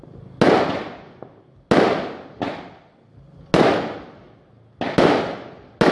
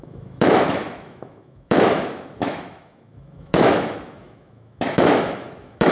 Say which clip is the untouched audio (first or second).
first